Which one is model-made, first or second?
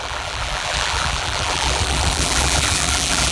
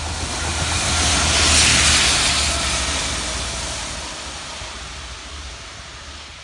first